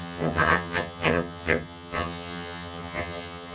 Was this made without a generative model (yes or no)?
no